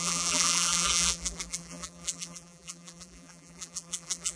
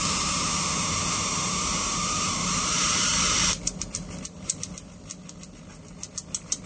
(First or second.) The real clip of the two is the second